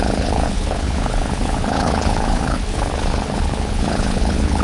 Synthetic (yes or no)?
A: yes